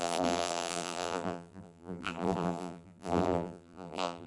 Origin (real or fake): fake